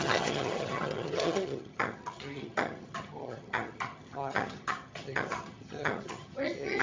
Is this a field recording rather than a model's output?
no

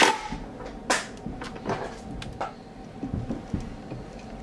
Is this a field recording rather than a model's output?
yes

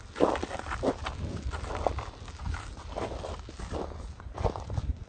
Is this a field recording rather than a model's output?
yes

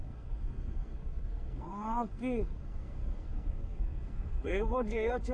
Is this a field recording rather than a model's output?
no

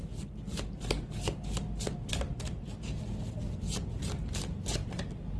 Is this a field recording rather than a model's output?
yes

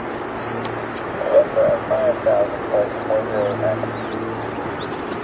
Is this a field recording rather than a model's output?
yes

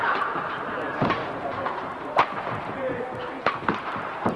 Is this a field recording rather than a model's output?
no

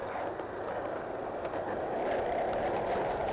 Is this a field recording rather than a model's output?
yes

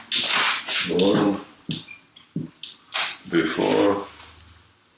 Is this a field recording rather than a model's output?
yes